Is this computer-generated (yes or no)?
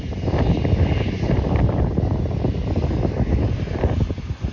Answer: no